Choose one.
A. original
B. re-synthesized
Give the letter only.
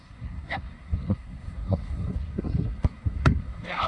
B